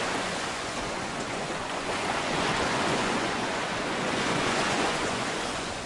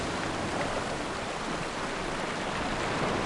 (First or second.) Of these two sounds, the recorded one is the second